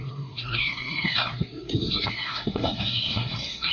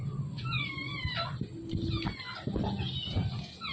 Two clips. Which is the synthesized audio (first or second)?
first